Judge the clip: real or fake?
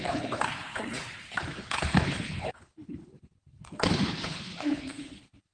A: fake